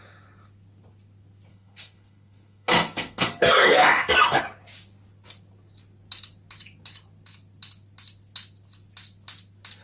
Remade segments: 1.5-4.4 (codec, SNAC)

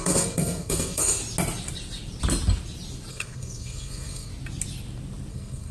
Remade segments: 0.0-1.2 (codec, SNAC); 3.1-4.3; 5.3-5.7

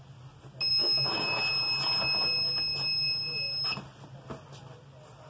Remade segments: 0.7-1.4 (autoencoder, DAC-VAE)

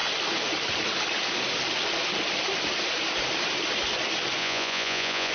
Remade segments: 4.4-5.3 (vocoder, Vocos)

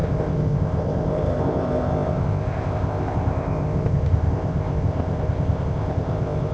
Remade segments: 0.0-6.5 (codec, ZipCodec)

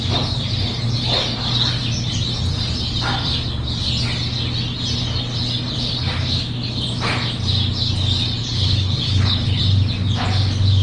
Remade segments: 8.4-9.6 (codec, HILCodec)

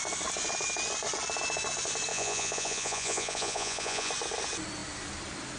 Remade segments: 2.1-4.1 (vocoder, Vocos)

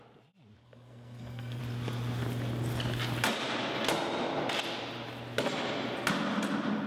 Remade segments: 0.6-1.6 (codec, SNAC)